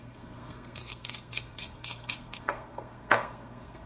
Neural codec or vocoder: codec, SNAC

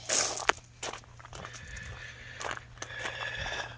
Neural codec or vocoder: none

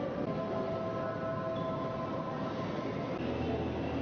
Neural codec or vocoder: none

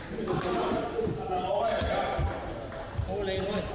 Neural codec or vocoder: none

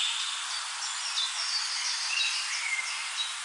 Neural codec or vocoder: none